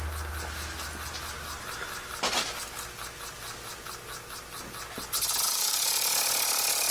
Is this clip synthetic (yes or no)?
no